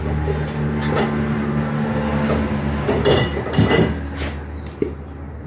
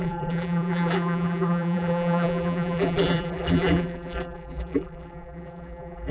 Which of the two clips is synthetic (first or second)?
second